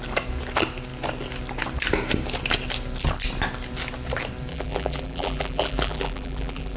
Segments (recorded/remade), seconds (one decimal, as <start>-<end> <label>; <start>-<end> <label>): 0.0-4.5 recorded; 4.5-6.8 remade